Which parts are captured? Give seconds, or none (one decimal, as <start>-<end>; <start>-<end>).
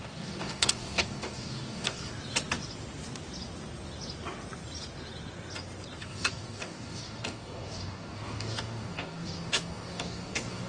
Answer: 2.1-6.0